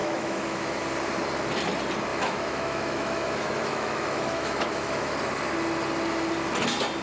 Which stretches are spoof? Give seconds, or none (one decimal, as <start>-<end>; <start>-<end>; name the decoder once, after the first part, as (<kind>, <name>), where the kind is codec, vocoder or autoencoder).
0.0-0.8 (autoencoder, DAC-VAE); 2.1-5.1